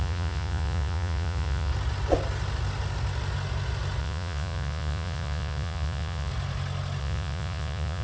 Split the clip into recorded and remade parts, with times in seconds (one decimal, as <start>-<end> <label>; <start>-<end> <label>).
0.0-1.7 remade; 1.7-4.0 recorded; 4.0-6.3 remade; 6.3-7.0 recorded; 7.0-8.0 remade